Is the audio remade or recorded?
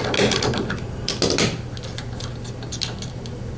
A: recorded